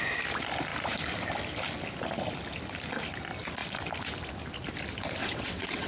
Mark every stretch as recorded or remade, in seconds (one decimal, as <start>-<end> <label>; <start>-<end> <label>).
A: 0.0-5.2 recorded; 5.2-5.9 remade